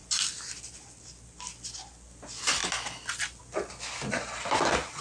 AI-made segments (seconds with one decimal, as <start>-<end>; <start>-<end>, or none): none